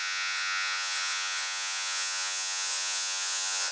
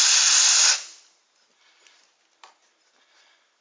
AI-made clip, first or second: first